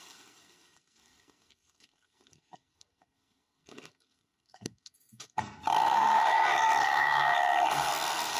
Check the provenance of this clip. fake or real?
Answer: fake